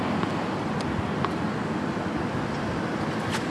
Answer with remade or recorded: recorded